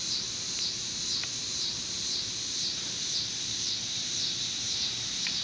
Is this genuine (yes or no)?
no